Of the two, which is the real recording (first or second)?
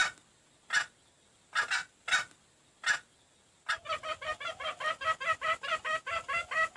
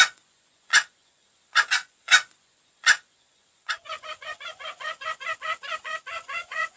first